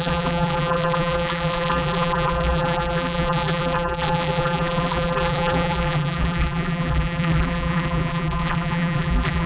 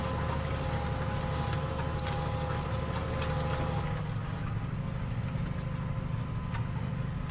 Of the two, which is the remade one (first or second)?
first